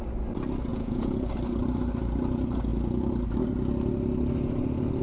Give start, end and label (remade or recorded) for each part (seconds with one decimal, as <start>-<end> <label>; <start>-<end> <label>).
0.0-0.7 recorded; 0.7-1.3 remade; 1.3-5.0 recorded